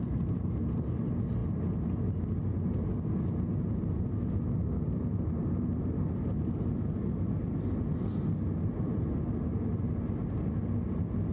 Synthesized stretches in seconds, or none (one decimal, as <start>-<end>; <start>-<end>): none